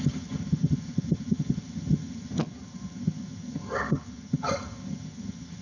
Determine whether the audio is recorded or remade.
remade